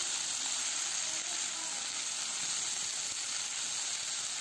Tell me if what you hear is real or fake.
real